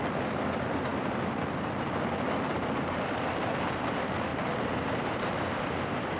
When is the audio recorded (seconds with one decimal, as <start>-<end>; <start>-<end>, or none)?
0.0-4.3